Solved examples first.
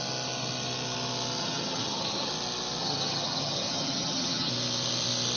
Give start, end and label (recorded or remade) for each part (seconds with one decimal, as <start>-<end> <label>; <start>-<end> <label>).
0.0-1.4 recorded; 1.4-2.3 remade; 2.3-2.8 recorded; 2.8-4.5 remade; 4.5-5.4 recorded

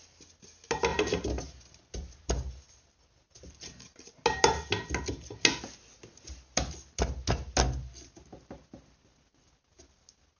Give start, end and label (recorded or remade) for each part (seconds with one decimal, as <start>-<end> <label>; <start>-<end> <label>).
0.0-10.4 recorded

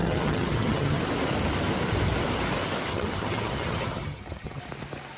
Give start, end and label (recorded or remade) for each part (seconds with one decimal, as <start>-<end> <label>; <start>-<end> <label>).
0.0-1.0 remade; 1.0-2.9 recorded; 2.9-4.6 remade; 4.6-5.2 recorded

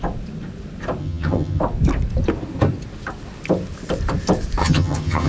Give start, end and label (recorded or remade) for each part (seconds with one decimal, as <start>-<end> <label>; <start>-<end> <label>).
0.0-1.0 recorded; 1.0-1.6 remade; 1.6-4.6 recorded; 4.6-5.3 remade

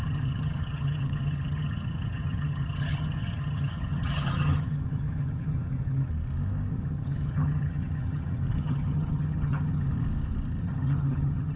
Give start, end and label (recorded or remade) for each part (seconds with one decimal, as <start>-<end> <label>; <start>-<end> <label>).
0.0-6.1 remade; 6.1-6.7 recorded; 6.7-9.9 remade; 9.9-10.6 recorded; 10.6-11.6 remade

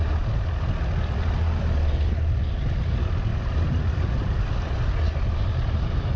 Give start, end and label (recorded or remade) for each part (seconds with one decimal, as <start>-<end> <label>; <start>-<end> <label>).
0.0-6.2 recorded

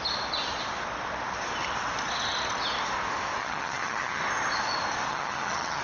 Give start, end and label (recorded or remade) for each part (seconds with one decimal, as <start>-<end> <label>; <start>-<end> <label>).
0.0-3.4 recorded; 3.4-4.2 remade; 4.2-5.1 recorded; 5.1-5.8 remade

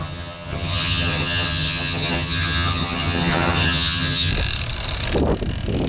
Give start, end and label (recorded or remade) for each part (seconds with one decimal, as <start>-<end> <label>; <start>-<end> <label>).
0.0-4.3 remade; 4.3-5.9 recorded